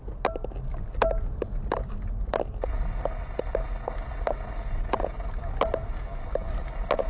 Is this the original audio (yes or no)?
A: yes